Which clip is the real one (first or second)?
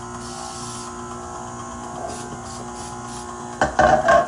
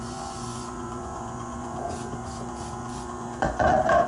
first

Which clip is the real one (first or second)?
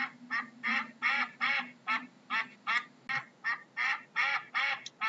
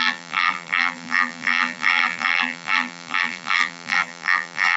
first